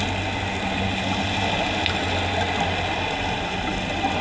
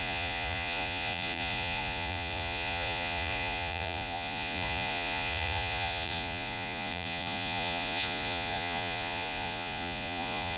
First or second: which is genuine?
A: first